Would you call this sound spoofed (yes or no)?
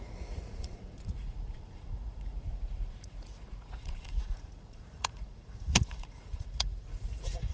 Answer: yes